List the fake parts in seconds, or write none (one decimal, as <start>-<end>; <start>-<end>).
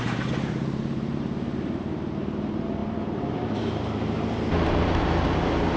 0.0-5.8